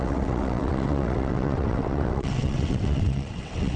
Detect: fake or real fake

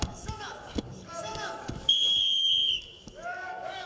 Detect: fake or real fake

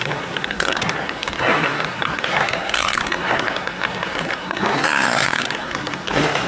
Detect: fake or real fake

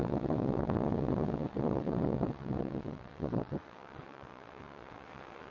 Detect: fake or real fake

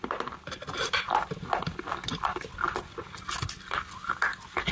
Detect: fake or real real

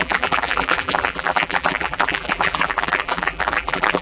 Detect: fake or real fake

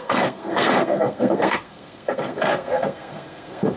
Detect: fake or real fake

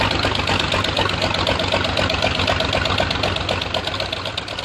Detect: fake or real real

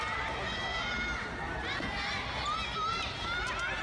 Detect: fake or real real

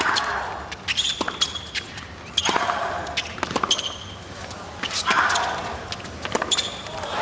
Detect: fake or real real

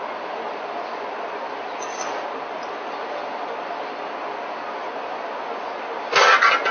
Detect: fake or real real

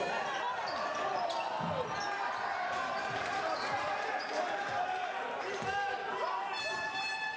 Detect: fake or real real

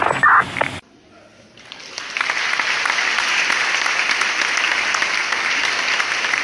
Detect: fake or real real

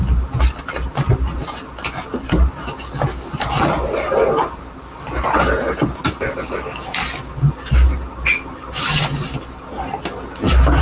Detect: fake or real real